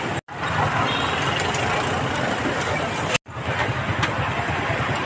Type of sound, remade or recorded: recorded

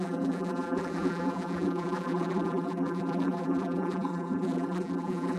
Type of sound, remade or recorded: remade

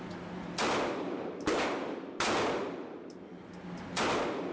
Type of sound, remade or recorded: recorded